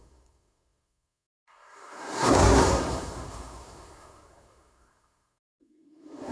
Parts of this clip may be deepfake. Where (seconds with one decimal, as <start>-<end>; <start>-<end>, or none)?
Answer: 0.0-6.3

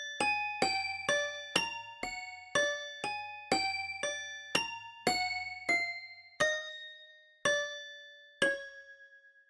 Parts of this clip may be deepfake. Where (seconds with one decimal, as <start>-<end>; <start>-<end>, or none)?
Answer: 6.4-7.1

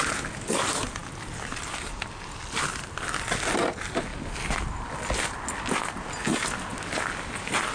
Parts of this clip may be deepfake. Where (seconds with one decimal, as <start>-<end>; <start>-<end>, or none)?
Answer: none

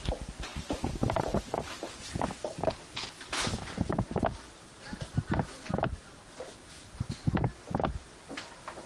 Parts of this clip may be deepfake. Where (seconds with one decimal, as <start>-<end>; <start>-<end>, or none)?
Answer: none

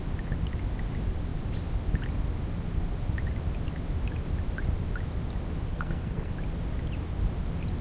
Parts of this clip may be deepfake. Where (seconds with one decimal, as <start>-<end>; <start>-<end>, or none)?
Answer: 5.7-6.3

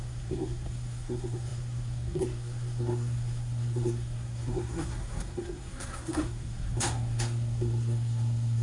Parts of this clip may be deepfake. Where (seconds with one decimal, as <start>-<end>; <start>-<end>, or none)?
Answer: 0.0-8.6

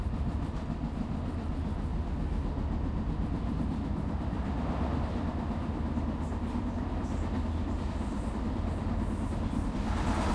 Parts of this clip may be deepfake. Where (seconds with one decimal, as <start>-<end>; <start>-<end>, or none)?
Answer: none

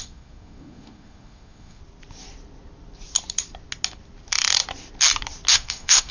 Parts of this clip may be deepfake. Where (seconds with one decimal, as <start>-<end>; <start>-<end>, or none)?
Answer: 0.0-1.8; 5.5-6.1